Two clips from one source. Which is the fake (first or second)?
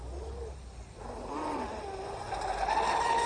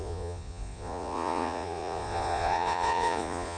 second